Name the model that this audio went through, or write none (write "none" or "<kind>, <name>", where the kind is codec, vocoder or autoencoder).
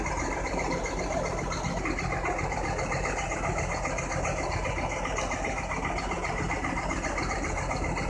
none